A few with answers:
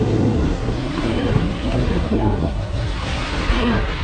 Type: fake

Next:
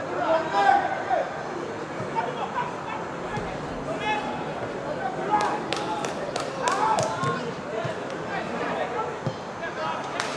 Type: real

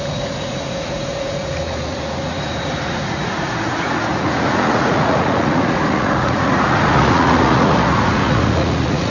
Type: fake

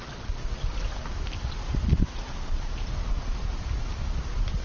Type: real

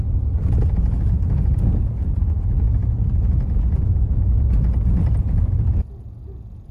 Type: fake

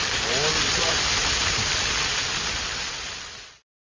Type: real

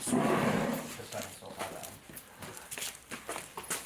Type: real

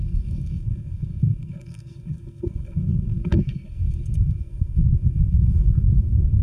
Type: fake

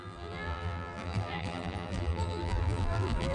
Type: fake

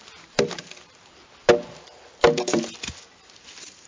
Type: real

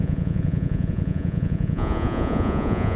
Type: fake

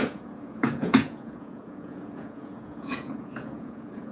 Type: fake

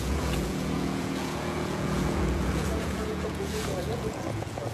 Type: fake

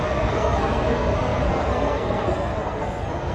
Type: fake